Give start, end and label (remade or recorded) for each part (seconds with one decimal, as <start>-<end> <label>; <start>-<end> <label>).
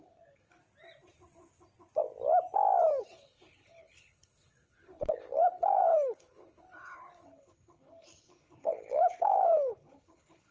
0.0-0.6 remade; 0.6-3.0 recorded; 3.0-10.5 remade